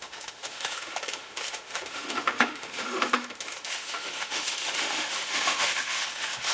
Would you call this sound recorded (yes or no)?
no